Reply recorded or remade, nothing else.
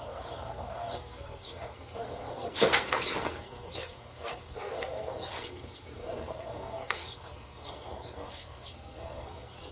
remade